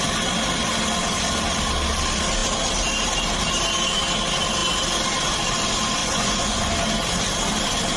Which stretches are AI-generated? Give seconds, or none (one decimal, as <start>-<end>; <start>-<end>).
6.0-6.7